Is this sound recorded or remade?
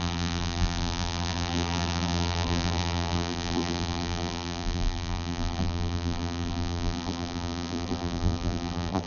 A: remade